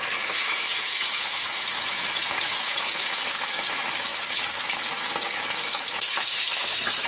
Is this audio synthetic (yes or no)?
yes